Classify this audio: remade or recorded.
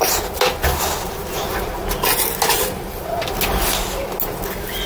recorded